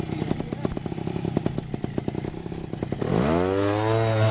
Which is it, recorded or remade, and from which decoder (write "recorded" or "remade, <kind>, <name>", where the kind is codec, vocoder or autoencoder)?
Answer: recorded